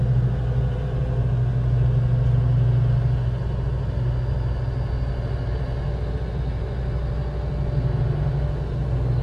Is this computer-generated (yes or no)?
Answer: no